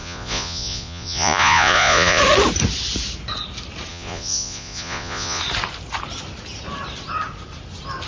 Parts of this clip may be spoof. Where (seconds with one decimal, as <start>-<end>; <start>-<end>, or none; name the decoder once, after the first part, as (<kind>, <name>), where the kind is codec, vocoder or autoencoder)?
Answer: 0.0-2.2 (vocoder, Vocos); 3.9-5.4